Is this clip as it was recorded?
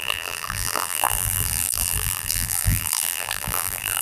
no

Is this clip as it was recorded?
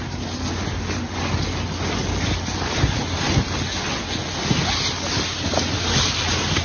yes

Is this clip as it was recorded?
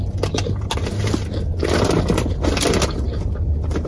yes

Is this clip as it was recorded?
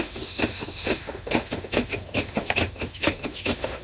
no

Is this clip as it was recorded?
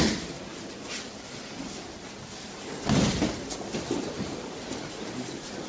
yes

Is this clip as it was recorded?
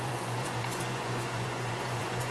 no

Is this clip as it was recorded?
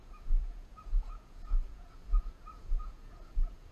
no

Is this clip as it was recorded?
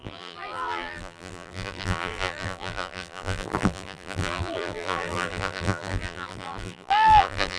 no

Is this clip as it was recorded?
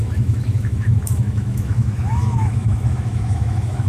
no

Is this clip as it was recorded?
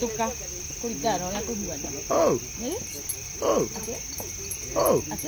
yes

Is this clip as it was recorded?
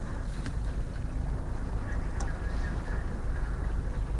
yes